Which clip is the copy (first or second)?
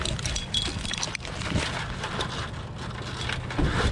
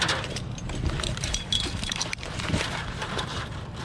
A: second